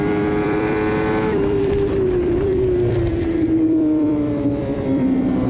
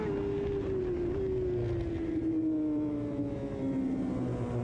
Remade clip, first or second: first